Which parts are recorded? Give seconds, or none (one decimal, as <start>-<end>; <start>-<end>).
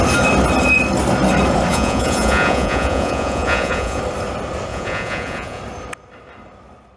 0.0-1.7; 4.0-4.7; 5.6-7.0